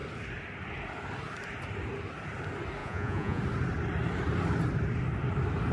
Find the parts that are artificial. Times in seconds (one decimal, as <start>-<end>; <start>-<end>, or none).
2.8-3.4